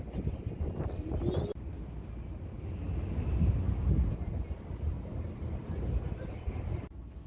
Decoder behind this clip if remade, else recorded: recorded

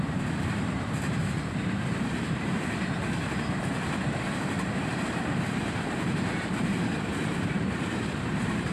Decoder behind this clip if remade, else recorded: remade, vocoder, BigVGAN v2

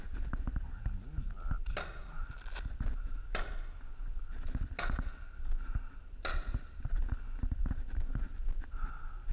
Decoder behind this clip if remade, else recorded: recorded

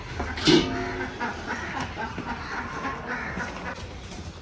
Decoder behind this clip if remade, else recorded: recorded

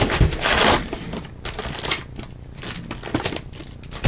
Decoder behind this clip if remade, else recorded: recorded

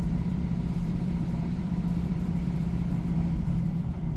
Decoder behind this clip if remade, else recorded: remade, vocoder, BigVGAN v2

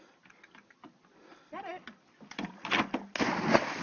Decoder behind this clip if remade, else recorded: recorded